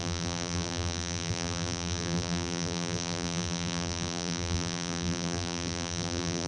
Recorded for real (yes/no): no